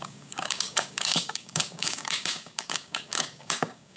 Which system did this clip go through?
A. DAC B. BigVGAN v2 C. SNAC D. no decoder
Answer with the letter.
A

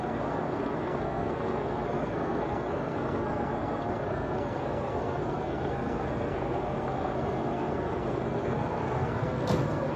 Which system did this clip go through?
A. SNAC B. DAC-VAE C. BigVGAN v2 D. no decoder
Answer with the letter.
A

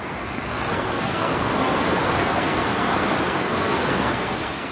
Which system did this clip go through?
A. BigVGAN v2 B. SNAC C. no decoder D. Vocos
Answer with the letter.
B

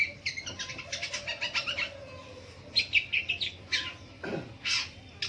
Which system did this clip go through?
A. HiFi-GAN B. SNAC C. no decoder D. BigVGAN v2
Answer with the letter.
C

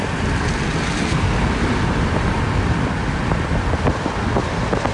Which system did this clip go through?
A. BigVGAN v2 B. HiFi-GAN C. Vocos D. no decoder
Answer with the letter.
D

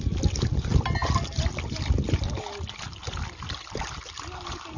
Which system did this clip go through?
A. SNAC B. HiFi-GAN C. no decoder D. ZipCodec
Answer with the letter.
C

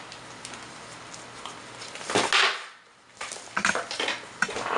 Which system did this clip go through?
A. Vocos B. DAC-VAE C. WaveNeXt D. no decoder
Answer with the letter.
D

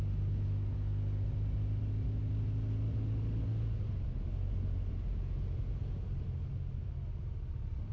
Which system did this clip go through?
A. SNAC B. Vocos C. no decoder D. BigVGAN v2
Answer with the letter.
C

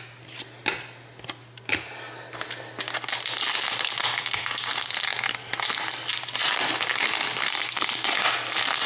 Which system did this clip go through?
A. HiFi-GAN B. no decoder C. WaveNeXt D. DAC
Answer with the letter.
B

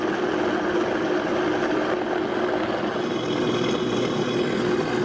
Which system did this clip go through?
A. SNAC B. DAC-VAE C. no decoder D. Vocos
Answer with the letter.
C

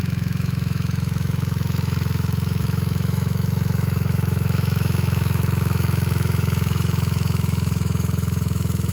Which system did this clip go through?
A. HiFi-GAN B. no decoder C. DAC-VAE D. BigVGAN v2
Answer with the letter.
C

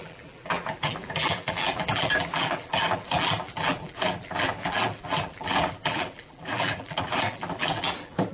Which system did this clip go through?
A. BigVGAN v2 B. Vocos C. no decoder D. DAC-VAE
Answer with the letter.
A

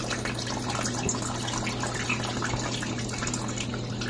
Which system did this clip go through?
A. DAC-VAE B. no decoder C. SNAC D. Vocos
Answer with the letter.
B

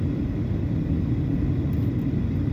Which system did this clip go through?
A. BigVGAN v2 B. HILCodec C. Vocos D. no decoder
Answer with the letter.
D